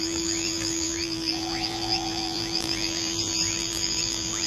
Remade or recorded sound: remade